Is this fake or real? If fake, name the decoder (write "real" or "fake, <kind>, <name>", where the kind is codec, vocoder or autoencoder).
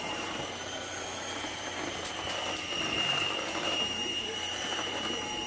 fake, vocoder, BigVGAN v2